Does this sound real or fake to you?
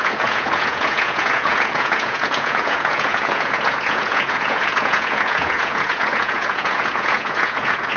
fake